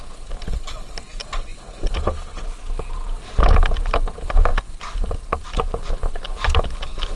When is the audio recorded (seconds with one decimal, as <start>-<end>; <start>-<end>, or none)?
0.0-1.2; 1.7-4.5; 5.9-7.2